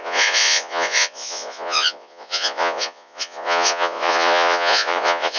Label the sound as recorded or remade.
remade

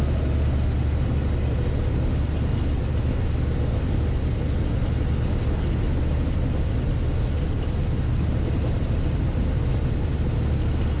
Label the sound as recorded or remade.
recorded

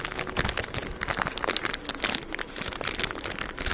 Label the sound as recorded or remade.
recorded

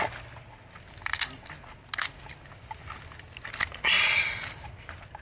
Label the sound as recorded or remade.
recorded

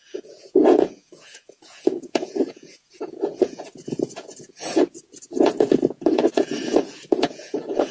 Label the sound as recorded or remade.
remade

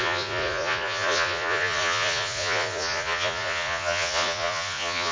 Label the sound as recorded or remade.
remade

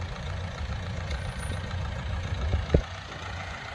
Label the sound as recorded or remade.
remade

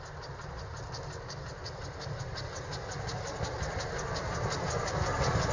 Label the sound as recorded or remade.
recorded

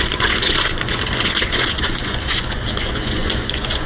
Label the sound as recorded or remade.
remade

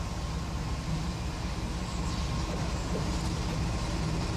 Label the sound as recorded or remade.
recorded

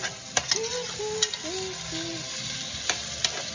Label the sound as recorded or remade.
recorded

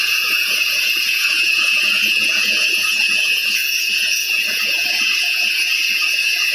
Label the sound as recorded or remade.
remade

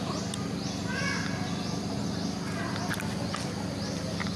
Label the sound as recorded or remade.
recorded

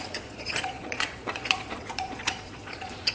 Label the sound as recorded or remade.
remade